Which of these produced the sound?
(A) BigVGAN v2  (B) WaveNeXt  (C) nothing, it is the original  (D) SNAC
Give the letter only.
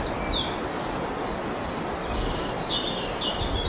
C